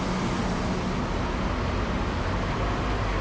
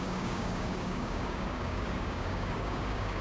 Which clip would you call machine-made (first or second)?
second